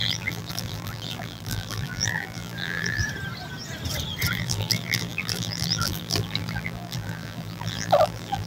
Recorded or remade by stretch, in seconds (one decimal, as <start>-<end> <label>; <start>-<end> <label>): 0.0-3.0 remade; 3.0-4.3 recorded; 4.3-8.5 remade